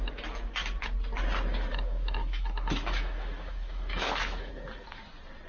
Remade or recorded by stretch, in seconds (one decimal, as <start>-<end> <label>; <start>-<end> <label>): 0.0-1.7 recorded; 1.7-4.5 remade; 4.5-5.5 recorded